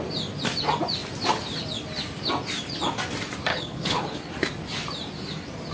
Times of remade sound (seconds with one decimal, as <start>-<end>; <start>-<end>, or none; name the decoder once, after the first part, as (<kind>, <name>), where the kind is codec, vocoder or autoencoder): 3.5-4.3 (codec, HILCodec)